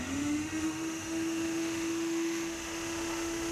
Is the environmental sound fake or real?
fake